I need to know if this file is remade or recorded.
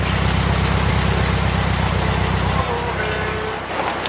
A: recorded